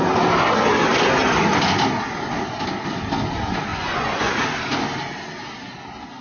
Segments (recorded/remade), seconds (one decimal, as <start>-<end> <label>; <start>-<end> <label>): 0.0-3.7 recorded; 3.7-4.3 remade; 4.3-6.2 recorded